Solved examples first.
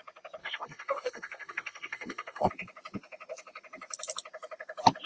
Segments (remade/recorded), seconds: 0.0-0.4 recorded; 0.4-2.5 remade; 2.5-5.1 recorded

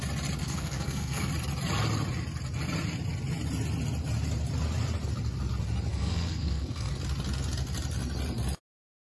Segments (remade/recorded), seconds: 0.0-0.4 recorded; 0.4-1.3 remade; 1.3-5.9 recorded; 5.9-6.9 remade; 6.9-9.1 recorded

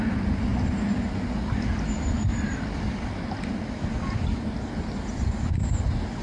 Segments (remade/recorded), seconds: 0.0-6.2 recorded

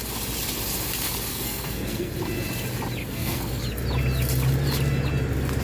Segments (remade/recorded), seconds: 0.0-1.3 recorded; 1.3-2.1 remade; 2.1-3.0 recorded; 3.0-3.6 remade; 3.6-5.6 recorded

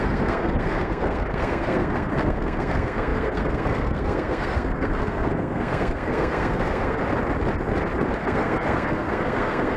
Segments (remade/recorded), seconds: 0.0-7.0 remade; 7.0-8.2 recorded; 8.2-9.8 remade